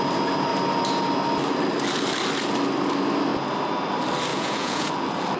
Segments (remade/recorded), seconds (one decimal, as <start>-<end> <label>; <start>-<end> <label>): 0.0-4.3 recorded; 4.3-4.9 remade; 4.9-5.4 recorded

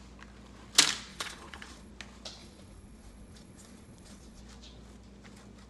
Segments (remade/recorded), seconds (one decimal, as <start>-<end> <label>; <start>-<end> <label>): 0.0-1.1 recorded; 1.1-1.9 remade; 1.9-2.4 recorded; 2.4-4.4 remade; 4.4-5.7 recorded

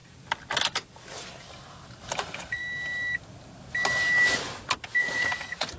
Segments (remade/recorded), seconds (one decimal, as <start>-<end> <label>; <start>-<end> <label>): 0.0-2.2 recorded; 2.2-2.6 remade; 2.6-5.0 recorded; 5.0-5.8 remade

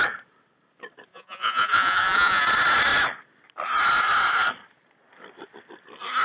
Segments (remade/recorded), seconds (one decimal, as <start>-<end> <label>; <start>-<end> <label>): 0.0-1.1 recorded; 1.1-2.4 remade; 2.4-6.2 recorded

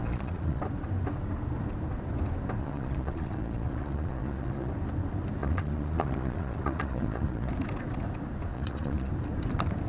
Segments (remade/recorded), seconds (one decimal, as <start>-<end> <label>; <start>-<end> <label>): 0.0-0.6 remade; 0.6-2.6 recorded; 2.6-4.7 remade; 4.7-5.4 recorded; 5.4-7.5 remade; 7.5-8.5 recorded; 8.5-9.1 remade; 9.1-9.9 recorded